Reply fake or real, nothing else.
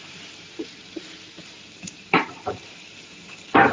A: fake